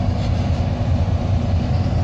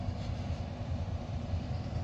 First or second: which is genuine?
first